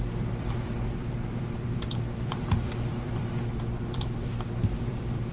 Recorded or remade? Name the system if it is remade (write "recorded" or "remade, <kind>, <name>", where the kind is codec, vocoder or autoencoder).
remade, vocoder, BigVGAN v2